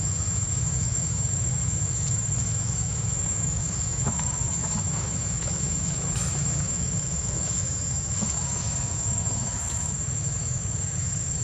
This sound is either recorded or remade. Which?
remade